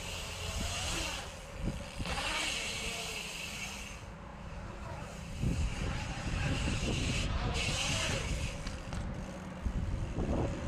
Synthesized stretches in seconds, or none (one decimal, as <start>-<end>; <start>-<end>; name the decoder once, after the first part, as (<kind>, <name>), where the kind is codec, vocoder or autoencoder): 4.3-8.3 (vocoder, BigVGAN v2)